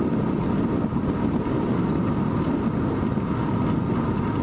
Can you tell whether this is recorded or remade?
recorded